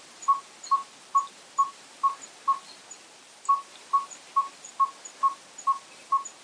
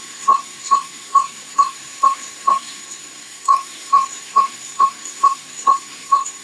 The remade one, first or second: second